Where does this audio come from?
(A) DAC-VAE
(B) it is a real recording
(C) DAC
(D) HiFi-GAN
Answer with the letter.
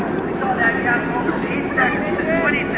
B